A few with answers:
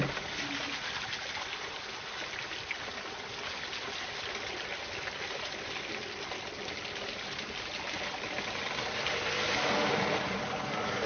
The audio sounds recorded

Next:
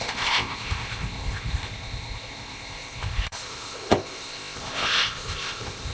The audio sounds remade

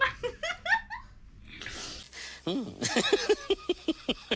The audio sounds recorded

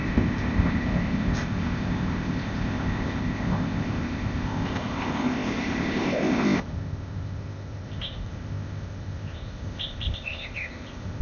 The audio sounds remade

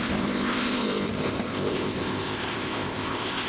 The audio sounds remade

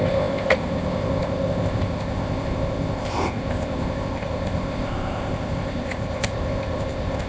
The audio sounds remade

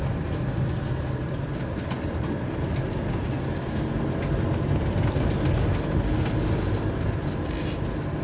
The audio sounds recorded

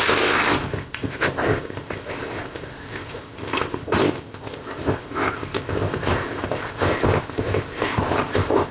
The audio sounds remade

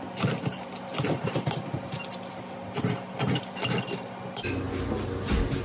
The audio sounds recorded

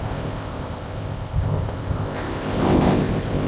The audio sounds remade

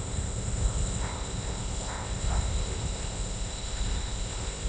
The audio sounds remade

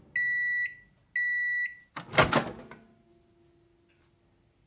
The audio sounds recorded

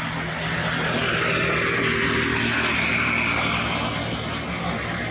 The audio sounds recorded